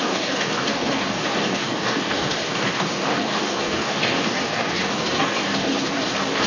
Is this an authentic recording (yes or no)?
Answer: no